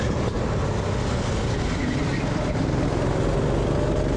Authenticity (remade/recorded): recorded